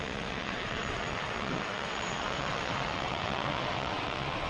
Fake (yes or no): yes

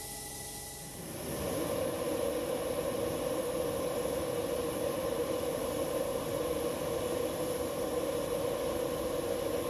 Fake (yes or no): no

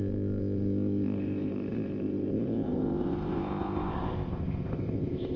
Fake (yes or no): yes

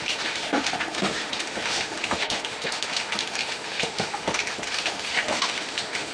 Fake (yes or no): yes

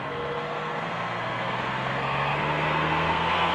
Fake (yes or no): yes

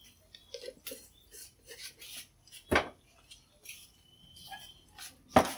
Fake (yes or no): no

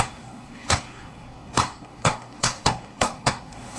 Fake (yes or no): yes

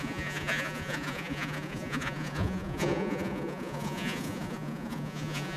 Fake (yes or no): yes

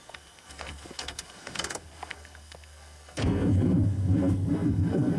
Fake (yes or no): yes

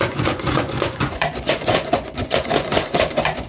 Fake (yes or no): yes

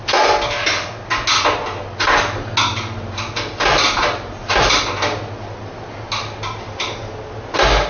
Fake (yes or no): no